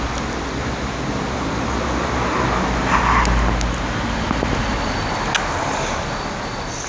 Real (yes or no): yes